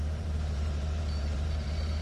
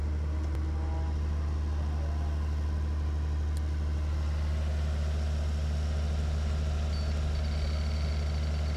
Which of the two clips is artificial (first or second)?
first